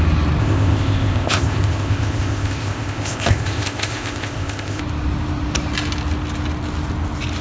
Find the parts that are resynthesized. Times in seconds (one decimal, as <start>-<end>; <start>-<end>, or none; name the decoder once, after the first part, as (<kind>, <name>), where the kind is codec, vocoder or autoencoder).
0.4-4.8 (codec, ZipCodec)

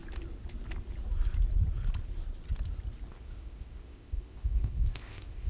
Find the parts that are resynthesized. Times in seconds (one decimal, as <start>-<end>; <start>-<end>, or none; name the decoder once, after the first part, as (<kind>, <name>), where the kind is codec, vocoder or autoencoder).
3.1-5.5 (codec, ZipCodec)

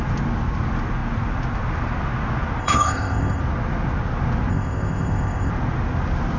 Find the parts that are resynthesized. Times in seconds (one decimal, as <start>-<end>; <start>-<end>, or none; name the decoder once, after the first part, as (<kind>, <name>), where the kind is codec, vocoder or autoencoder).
2.6-3.4 (codec, ZipCodec); 4.5-5.5

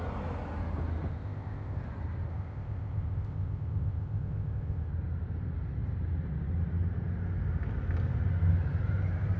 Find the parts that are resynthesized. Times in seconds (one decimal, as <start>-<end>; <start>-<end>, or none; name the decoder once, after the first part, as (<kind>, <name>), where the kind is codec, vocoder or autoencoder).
1.1-1.8 (codec, ZipCodec); 2.3-4.9

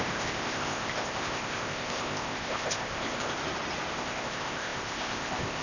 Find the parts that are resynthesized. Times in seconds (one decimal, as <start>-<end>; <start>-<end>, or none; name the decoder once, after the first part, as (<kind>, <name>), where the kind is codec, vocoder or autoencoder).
0.0-3.4 (codec, ZipCodec); 3.9-5.6